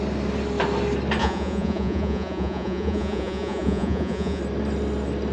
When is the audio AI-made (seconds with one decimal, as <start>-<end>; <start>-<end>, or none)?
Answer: 1.2-4.4